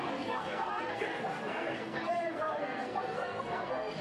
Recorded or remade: remade